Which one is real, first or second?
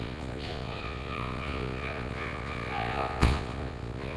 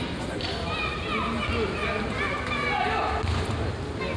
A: second